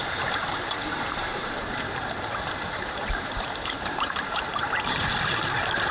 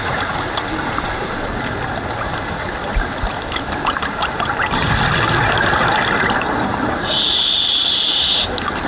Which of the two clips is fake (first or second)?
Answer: first